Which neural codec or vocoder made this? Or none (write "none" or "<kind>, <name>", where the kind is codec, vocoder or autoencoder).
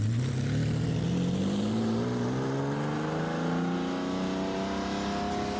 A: none